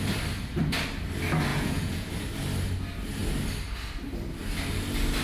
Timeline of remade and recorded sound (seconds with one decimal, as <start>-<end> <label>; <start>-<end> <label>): 0.0-1.5 recorded; 1.5-2.1 remade; 2.1-5.2 recorded